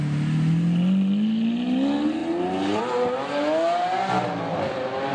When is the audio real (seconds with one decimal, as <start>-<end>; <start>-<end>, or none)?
0.0-5.1